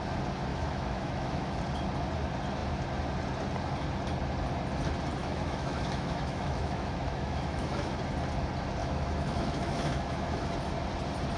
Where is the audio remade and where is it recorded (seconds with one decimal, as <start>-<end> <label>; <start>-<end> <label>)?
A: 0.0-0.5 recorded; 0.5-1.6 remade; 1.6-5.2 recorded; 5.2-8.0 remade; 8.0-8.8 recorded; 8.8-10.5 remade; 10.5-11.4 recorded